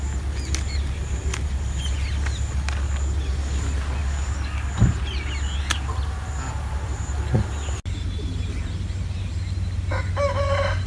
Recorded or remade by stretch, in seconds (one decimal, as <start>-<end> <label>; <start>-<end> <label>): 0.0-10.9 recorded